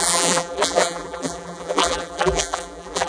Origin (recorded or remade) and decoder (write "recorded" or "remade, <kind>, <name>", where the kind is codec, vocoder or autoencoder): remade, vocoder, BigVGAN v2